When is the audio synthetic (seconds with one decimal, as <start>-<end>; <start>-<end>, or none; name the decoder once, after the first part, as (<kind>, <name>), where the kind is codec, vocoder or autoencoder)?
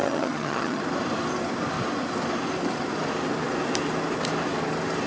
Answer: 0.0-0.8 (vocoder, HiFi-GAN)